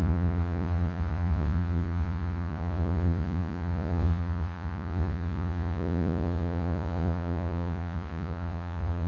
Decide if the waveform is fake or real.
fake